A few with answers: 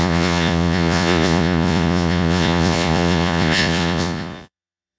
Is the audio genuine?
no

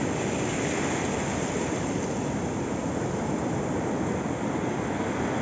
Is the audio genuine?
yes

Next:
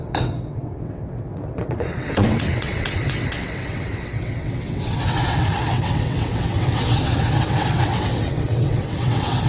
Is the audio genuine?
no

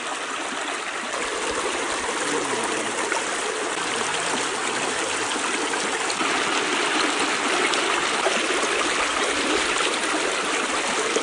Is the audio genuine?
yes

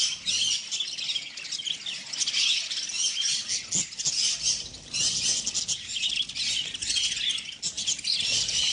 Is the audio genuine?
yes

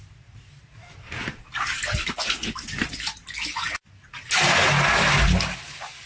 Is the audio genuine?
yes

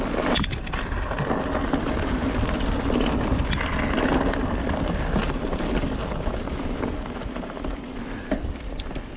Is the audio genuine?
yes